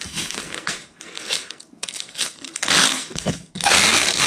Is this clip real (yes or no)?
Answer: no